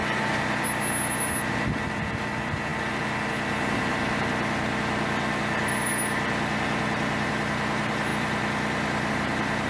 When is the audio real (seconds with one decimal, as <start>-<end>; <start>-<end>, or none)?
0.0-9.7